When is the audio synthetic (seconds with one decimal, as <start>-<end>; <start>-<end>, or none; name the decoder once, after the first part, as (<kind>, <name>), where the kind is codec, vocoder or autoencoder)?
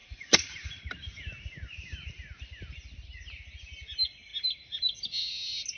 0.0-0.8 (vocoder, Vocos)